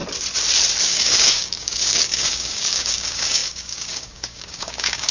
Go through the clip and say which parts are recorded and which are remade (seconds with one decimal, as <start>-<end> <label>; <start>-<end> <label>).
0.0-0.8 recorded; 0.8-5.1 remade